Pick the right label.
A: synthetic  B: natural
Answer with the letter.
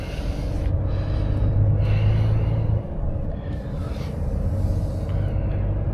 B